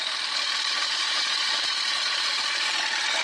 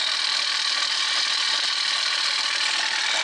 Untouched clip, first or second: second